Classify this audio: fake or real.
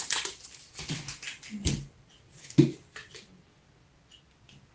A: real